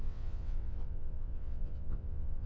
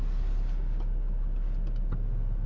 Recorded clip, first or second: second